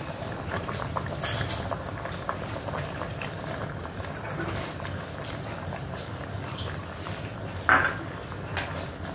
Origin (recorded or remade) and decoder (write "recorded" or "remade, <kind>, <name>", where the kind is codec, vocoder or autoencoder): recorded